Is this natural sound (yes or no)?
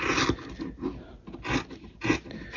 yes